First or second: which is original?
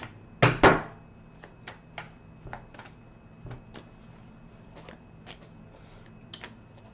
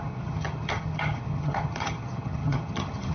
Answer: first